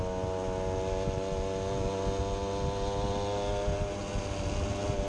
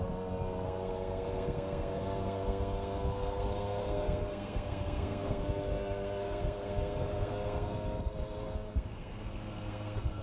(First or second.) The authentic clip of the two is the first